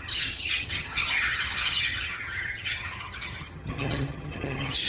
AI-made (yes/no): yes